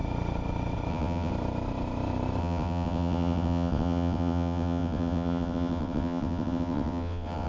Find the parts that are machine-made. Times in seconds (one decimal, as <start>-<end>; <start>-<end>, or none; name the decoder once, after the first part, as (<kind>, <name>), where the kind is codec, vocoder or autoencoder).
0.9-1.3 (vocoder, WaveNeXt); 2.4-7.5